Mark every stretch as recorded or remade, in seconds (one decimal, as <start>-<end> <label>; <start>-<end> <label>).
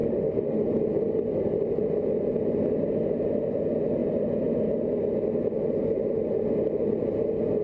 0.0-0.6 remade; 0.6-7.6 recorded